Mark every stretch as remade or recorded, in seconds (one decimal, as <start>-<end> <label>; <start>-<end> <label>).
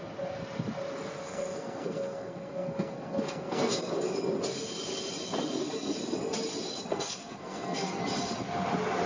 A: 0.0-1.2 recorded; 1.2-3.9 remade; 3.9-6.9 recorded; 6.9-8.0 remade; 8.0-9.1 recorded